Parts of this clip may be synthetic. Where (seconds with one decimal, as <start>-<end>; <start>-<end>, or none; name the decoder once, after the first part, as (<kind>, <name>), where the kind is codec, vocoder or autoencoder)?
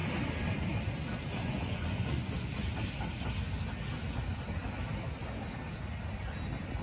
1.4-2.7 (vocoder, Vocos)